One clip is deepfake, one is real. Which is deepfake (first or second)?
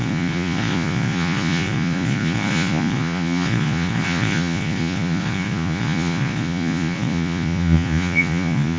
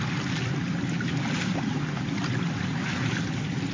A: first